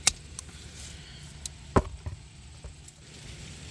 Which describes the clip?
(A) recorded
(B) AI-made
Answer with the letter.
A